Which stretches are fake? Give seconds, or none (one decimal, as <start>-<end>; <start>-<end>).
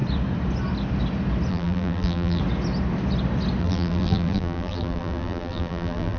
1.5-2.4; 3.6-6.2